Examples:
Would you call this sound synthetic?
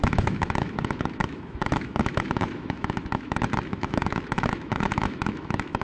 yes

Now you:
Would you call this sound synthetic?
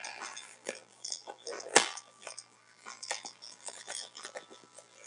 yes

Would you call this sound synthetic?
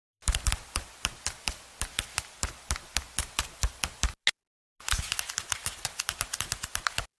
no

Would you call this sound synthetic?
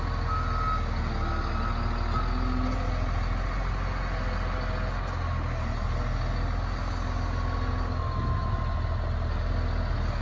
no